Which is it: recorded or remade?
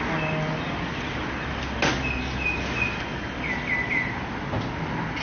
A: recorded